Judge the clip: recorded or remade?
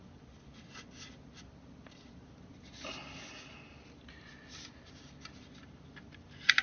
recorded